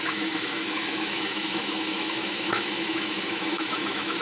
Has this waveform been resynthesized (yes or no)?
yes